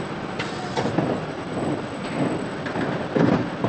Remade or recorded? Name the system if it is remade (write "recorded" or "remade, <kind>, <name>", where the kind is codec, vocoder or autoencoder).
recorded